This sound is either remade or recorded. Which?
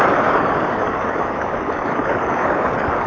remade